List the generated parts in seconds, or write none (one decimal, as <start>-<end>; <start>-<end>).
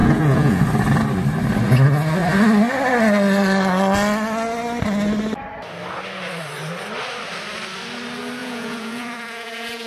0.0-0.6; 8.4-9.9